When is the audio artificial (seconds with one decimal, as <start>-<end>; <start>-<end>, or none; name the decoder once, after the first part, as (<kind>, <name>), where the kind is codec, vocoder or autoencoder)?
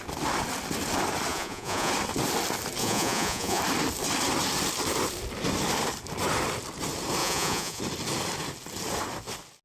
1.3-1.9 (vocoder, Vocos); 2.8-3.6; 7.2-7.8